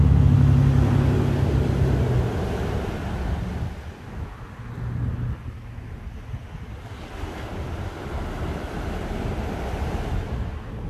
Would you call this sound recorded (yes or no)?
yes